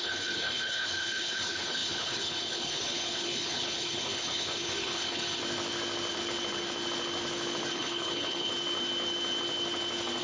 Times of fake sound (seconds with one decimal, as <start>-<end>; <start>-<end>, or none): 0.0-5.2; 7.7-8.5